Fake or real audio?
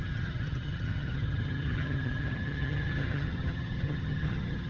fake